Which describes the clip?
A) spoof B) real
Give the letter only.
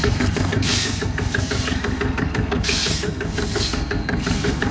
A